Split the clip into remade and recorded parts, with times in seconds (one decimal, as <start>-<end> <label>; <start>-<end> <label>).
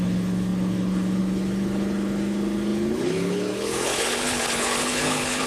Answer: 0.0-5.5 remade